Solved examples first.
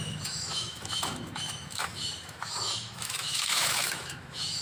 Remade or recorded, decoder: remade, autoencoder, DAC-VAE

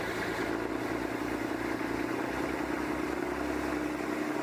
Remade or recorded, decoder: recorded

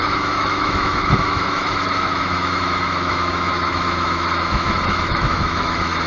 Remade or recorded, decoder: remade, autoencoder, DAC-VAE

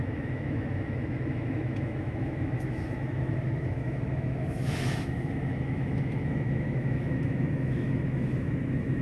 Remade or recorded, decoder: remade, autoencoder, DAC-VAE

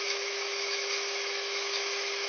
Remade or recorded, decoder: remade, autoencoder, DAC-VAE